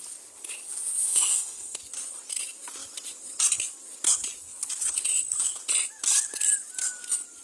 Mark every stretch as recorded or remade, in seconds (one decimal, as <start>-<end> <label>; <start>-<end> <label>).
0.0-1.0 recorded; 1.0-1.8 remade; 1.8-7.4 recorded